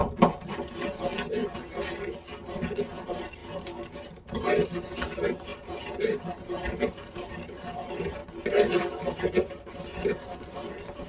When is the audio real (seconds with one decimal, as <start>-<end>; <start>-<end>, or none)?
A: 0.0-2.6; 3.4-4.1; 8.2-9.2